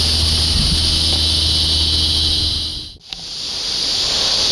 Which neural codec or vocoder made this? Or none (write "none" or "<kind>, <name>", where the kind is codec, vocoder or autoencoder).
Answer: none